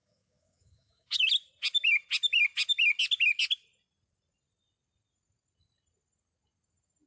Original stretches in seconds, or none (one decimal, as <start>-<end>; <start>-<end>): 1.2-7.1